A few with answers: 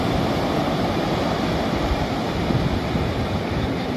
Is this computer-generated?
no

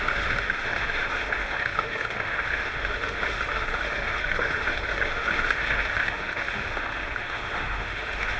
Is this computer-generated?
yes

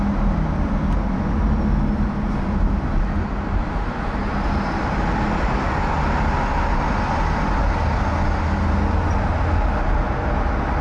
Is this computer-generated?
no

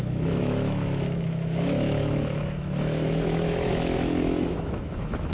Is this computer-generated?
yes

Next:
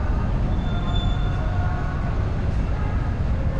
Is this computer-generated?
no